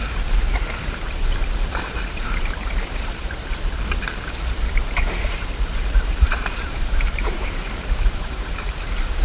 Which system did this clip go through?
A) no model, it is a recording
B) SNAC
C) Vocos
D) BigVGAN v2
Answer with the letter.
D